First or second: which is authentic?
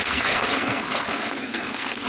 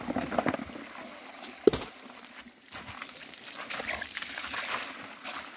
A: second